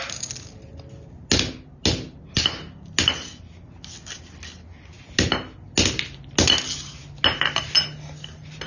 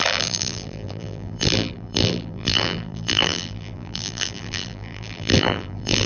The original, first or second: first